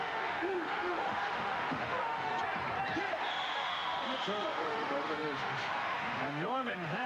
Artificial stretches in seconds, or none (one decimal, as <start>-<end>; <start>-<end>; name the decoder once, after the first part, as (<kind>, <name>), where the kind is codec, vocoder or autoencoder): 0.0-2.3 (autoencoder, DAC-VAE); 3.3-7.1